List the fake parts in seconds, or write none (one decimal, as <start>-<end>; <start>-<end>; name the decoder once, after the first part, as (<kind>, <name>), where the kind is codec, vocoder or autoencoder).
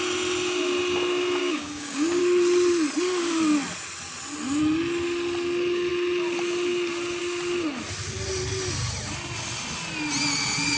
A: 1.4-2.2 (codec, DAC)